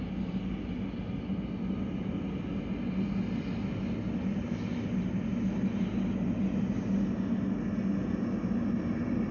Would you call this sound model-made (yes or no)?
no